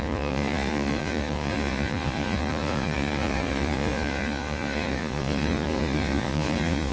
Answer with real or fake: fake